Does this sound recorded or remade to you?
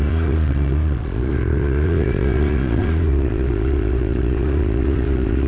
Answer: remade